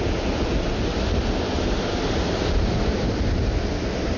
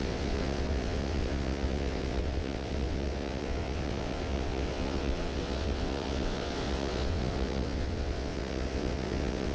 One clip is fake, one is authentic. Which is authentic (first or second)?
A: first